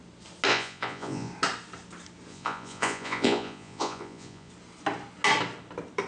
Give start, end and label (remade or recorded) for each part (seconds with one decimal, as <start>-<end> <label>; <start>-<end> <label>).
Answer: 0.0-0.5 recorded; 0.5-1.3 remade; 1.3-2.3 recorded; 2.3-4.5 remade; 4.5-6.1 recorded